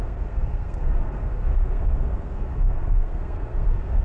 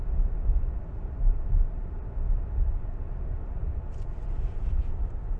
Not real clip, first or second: first